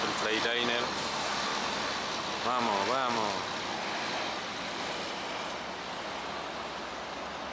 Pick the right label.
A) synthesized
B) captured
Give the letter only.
B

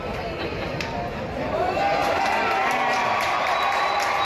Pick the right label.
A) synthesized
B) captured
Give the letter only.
B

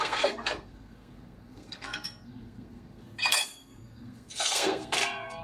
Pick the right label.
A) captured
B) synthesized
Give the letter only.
B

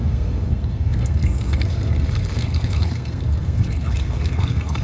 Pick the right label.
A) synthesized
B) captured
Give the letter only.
A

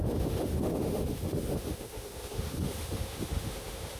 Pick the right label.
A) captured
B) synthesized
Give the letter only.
B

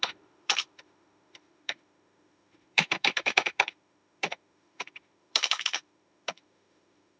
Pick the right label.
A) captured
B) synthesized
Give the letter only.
B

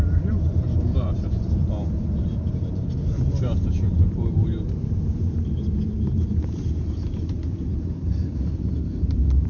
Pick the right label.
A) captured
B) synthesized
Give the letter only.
B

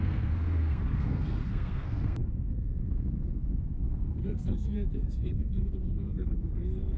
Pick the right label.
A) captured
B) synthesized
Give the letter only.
B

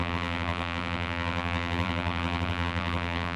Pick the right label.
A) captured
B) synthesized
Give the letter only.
B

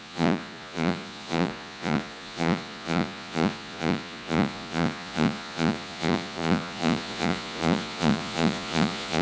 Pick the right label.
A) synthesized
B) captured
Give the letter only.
A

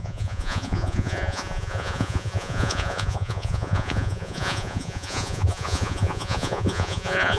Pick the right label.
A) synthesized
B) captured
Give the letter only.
A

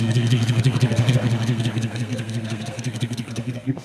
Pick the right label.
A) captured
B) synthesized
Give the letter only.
B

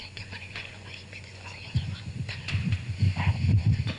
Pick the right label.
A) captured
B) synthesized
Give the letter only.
B